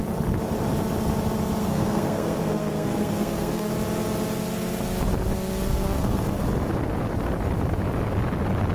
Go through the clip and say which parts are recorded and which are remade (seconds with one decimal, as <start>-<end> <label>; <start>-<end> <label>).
0.0-1.6 recorded; 1.6-3.7 remade; 3.7-5.7 recorded; 5.7-6.4 remade; 6.4-8.7 recorded